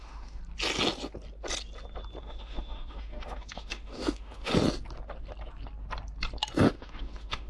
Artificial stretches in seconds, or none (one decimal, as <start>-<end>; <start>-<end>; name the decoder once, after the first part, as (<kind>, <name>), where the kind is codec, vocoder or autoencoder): 0.0-0.4 (autoencoder, DAC-VAE); 2.2-4.5; 6.7-7.5